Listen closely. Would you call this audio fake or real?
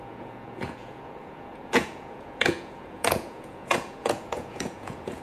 fake